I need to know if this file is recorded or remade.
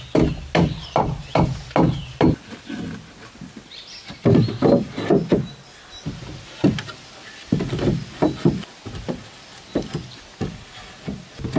recorded